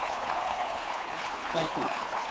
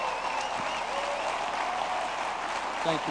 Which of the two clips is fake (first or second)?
first